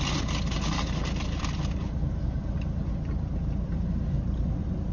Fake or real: real